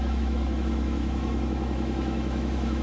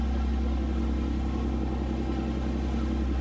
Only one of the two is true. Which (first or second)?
second